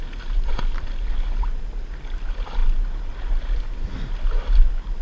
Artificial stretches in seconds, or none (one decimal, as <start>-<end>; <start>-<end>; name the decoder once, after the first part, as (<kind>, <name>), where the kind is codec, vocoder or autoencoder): none

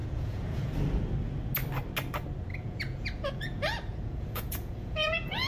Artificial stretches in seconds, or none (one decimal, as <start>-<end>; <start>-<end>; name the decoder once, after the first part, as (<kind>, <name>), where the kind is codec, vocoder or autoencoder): 0.0-0.7 (vocoder, Vocos); 2.5-5.5

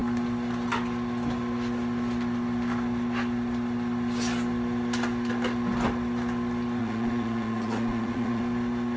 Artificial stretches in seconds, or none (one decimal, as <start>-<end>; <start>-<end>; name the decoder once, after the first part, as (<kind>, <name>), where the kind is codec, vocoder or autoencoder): 6.8-8.4 (vocoder, Vocos)

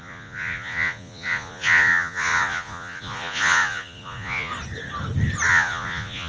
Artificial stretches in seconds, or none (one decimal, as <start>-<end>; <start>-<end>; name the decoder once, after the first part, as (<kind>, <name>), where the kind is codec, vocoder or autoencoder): 0.0-4.5 (vocoder, Vocos); 5.5-6.3

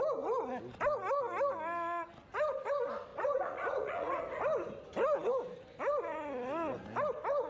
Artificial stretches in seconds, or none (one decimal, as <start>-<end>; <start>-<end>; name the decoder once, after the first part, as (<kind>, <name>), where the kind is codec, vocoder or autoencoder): 3.1-4.2 (vocoder, Vocos)

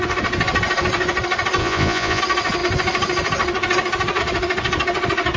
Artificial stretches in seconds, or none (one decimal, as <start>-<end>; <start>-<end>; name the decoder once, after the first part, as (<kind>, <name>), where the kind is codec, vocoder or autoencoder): 1.6-2.2 (vocoder, Vocos)

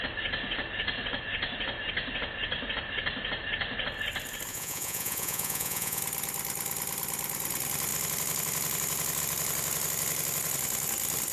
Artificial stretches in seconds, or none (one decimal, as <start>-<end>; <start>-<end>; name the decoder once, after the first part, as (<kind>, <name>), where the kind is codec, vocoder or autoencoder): 4.5-6.0 (vocoder, Vocos)